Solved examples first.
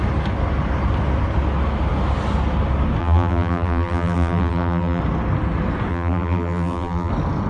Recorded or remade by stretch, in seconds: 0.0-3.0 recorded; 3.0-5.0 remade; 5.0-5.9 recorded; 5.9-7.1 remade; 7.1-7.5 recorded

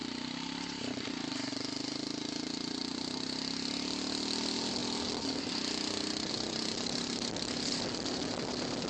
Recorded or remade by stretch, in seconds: 0.0-1.5 remade; 1.5-8.9 recorded